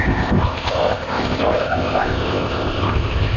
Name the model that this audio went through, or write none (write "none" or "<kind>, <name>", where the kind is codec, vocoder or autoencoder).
codec, ZipCodec